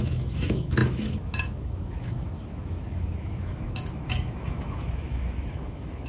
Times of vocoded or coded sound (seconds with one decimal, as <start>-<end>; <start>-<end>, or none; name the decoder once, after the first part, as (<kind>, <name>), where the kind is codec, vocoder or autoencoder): 0.0-6.1 (autoencoder, DAC-VAE)